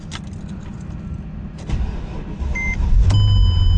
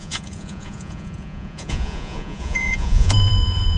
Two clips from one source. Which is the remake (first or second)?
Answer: second